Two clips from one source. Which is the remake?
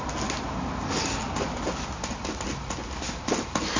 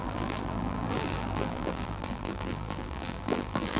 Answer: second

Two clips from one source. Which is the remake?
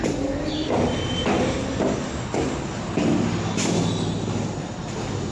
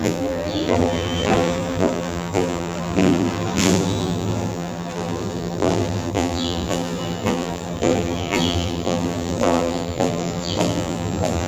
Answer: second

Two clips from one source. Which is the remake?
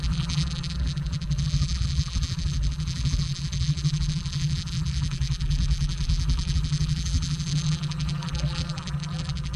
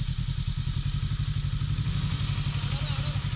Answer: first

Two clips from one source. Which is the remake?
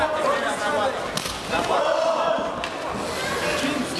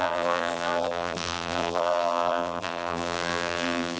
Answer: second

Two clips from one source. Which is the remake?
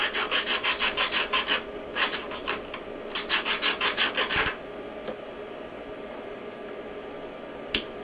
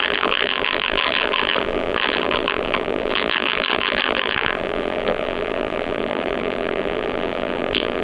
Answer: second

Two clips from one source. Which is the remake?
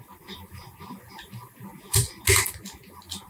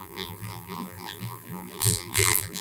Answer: second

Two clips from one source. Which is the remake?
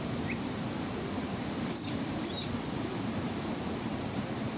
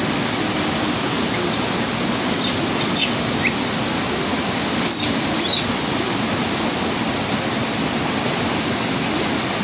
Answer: first